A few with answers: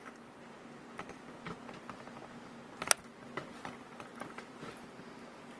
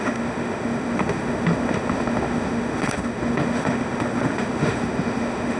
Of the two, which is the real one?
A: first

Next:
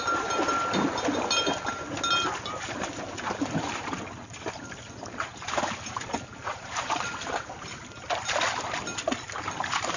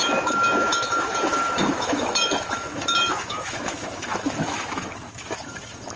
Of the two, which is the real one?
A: first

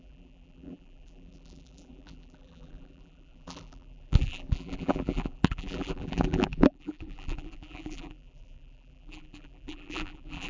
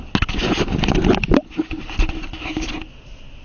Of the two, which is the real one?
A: second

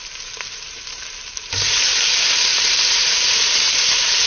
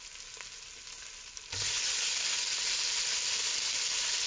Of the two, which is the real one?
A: second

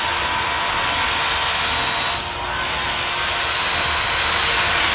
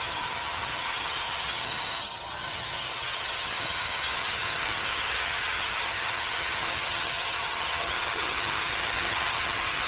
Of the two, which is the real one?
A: first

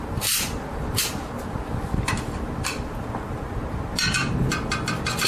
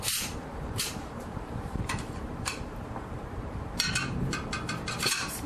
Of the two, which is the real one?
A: first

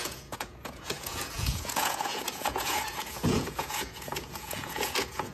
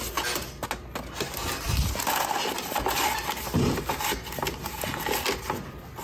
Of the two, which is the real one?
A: second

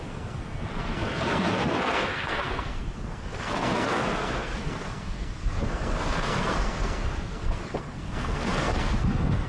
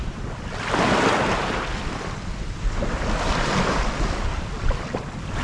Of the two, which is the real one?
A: second